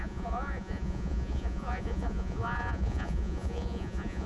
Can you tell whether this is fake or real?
fake